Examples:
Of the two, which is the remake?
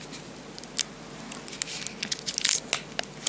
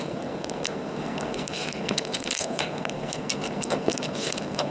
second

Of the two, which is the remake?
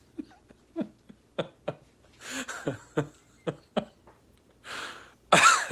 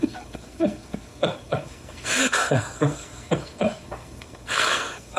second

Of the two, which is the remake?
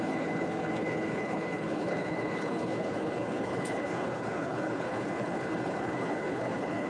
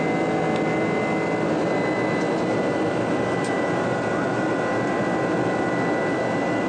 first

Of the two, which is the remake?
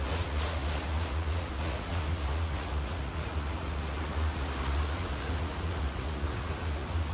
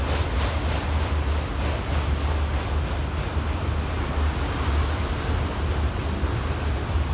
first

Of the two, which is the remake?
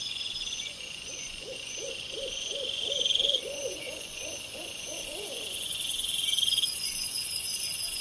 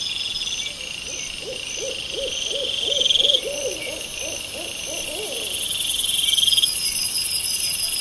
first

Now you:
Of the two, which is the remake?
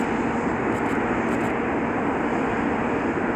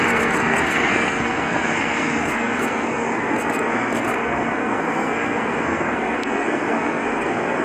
second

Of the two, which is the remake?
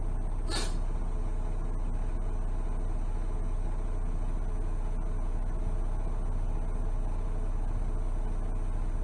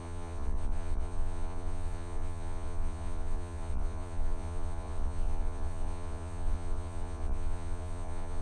second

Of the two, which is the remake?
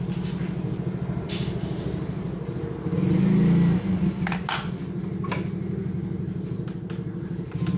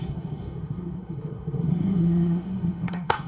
second